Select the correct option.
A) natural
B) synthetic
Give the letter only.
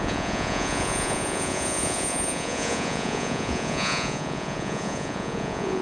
B